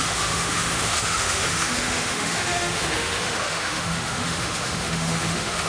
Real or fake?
fake